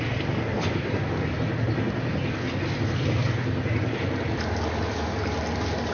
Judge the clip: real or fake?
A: real